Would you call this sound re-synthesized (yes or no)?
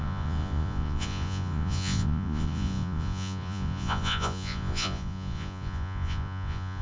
yes